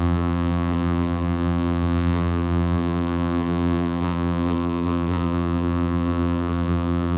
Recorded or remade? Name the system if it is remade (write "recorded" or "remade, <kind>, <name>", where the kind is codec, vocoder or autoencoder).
remade, vocoder, BigVGAN v2